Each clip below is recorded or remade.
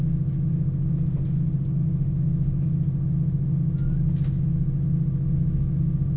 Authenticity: recorded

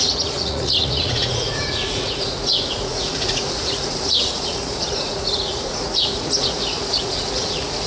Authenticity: remade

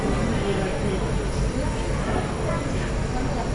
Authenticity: recorded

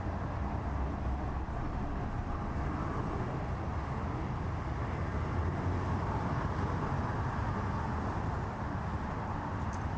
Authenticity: recorded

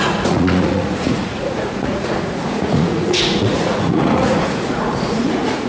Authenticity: remade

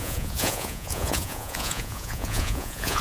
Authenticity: remade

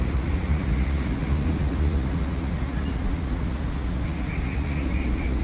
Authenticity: remade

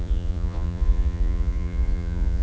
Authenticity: remade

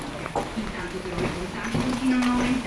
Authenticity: recorded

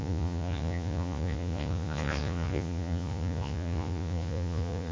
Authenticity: remade